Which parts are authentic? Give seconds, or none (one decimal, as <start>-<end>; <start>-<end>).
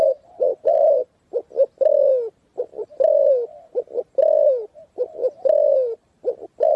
1.0-2.6